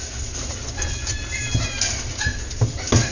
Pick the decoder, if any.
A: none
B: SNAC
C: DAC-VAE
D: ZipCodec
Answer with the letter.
A